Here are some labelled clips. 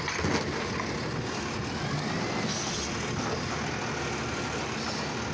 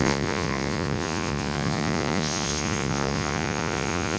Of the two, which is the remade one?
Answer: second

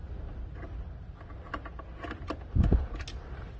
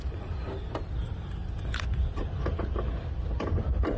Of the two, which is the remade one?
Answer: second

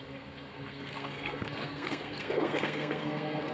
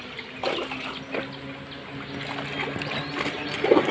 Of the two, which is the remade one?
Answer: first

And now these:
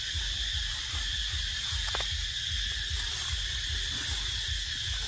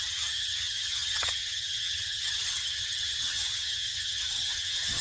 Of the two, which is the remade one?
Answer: second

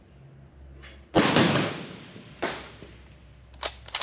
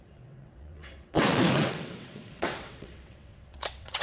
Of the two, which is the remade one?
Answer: second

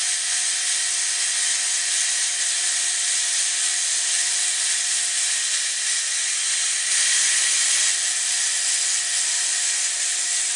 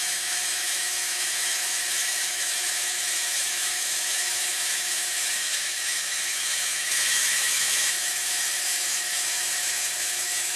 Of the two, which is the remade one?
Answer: second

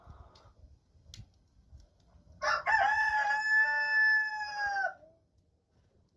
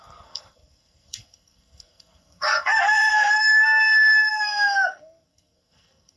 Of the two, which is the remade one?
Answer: second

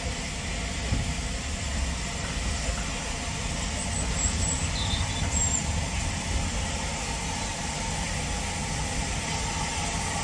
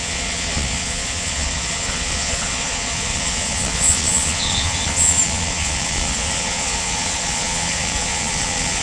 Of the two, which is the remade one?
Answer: second